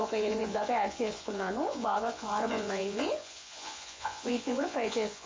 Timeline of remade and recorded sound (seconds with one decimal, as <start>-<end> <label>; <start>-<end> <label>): 0.0-5.3 remade